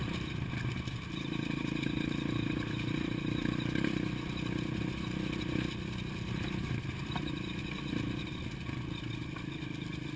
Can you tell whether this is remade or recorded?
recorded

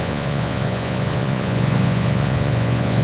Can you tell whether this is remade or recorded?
remade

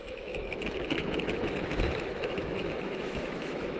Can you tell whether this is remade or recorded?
remade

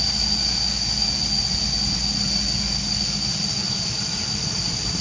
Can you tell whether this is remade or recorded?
recorded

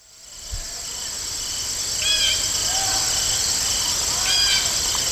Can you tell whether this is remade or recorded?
recorded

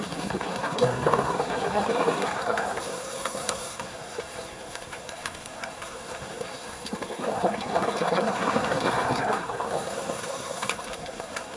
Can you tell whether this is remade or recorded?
remade